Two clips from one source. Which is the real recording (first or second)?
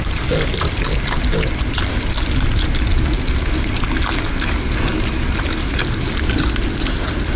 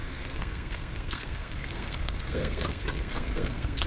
first